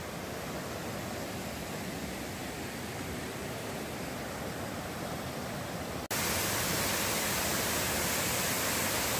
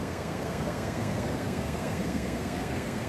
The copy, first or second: second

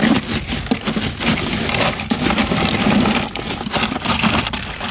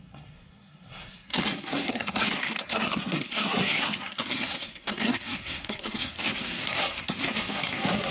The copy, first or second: second